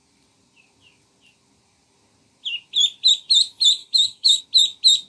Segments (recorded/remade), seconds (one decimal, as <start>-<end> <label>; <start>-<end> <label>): 0.0-3.8 recorded; 3.8-4.4 remade; 4.4-5.1 recorded